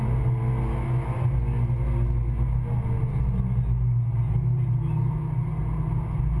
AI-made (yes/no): no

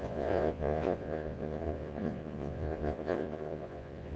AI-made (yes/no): yes